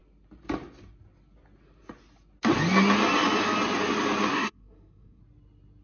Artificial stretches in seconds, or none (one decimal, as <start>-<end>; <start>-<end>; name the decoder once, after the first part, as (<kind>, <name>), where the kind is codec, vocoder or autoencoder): 4.3-5.2 (codec, SNAC)